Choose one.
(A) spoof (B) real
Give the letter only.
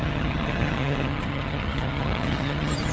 A